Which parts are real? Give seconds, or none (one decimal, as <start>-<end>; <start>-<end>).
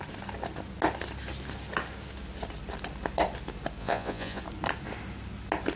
0.0-3.8; 4.4-5.8